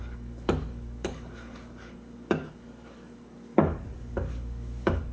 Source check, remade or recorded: remade